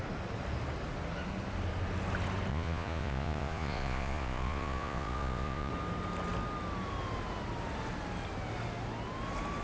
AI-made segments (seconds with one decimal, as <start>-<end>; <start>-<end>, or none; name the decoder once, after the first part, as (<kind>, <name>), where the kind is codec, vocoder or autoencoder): 2.5-5.7 (vocoder, Vocos)